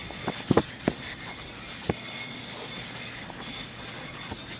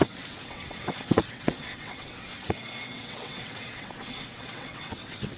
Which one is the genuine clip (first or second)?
first